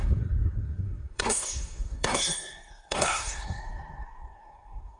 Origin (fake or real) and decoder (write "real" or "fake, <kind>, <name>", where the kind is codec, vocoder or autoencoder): fake, codec, SNAC